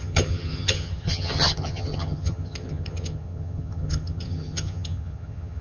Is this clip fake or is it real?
fake